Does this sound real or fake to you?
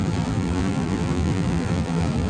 fake